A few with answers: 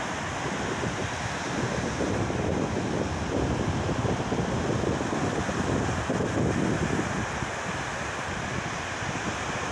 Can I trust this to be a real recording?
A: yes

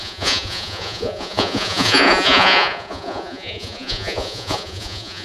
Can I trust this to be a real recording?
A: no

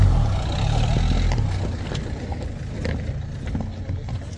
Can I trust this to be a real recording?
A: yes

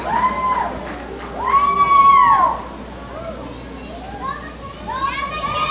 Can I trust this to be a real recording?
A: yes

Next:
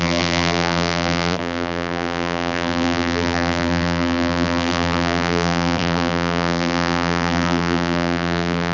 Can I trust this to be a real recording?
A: no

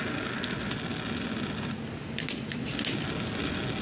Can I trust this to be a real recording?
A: yes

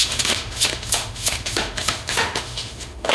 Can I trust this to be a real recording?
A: no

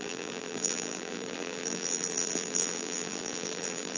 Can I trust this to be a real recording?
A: no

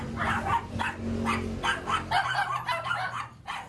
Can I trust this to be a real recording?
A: yes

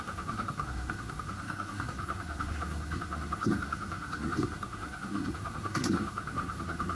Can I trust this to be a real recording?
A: no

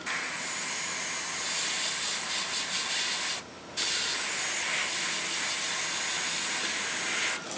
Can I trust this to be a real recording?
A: yes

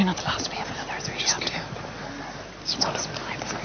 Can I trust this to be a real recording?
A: yes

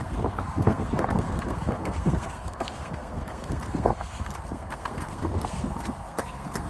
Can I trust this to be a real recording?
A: no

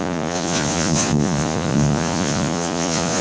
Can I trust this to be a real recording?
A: no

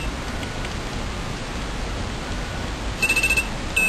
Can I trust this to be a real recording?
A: yes